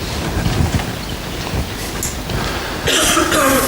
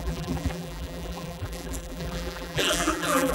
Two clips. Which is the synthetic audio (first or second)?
second